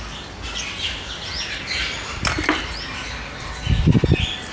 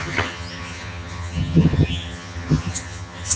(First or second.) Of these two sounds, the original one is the first